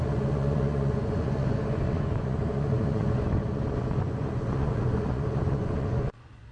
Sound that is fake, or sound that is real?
fake